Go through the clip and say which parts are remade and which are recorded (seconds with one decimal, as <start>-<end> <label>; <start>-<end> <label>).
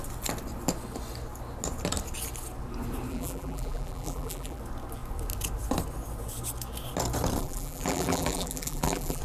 0.0-3.1 recorded; 3.1-4.6 remade; 4.6-7.4 recorded; 7.4-9.2 remade